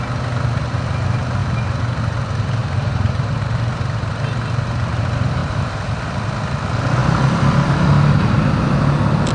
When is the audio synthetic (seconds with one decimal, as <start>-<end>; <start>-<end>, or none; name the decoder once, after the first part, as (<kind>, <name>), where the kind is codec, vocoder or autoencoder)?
1.4-2.0 (vocoder, BigVGAN v2); 2.6-4.1; 5.4-6.1